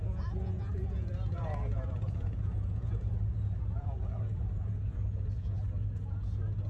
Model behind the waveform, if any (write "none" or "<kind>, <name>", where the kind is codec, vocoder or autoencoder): vocoder, Vocos